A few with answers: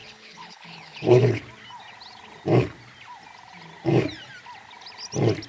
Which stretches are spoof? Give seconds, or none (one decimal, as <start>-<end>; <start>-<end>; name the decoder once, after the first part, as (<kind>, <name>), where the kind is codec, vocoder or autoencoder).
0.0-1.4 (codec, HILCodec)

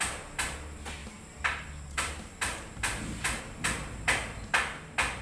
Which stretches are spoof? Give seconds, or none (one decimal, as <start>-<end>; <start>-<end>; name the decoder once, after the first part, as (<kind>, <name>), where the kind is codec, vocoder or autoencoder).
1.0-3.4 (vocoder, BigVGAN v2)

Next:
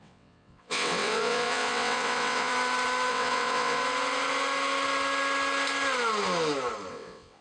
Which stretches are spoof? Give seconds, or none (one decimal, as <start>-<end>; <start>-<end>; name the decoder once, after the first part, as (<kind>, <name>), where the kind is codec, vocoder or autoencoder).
0.0-2.5 (vocoder, WaveNeXt); 3.1-3.8; 6.9-7.4

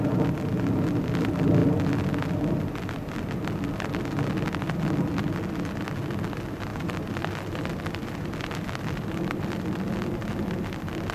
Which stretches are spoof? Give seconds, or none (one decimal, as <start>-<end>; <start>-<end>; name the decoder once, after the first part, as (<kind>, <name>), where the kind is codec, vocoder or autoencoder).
6.7-10.3 (vocoder, BigVGAN v2)

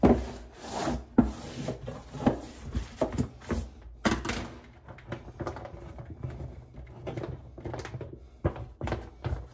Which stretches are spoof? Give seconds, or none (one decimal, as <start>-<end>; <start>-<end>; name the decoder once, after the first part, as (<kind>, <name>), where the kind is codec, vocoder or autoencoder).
2.4-3.1 (vocoder, BigVGAN v2)